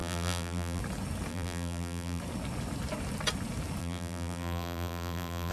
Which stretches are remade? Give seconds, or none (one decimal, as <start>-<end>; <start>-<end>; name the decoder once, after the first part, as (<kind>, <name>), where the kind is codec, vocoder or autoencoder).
0.0-0.8 (vocoder, BigVGAN v2); 1.3-2.2; 3.8-5.5

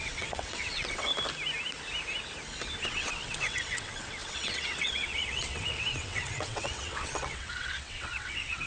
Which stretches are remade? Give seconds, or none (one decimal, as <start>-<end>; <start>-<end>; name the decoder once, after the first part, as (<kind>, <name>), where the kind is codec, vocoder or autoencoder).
0.0-1.1 (vocoder, WaveNeXt); 2.8-8.7

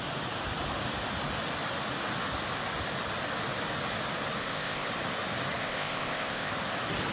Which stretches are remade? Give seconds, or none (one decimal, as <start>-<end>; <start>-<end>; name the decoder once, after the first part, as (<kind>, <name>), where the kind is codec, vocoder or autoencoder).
4.4-4.9 (codec, ZipCodec); 5.6-6.5

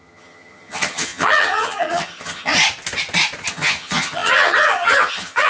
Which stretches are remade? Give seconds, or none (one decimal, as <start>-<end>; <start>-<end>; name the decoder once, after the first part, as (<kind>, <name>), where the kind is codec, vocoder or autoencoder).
0.0-2.5 (vocoder, HiFi-GAN); 3.5-5.5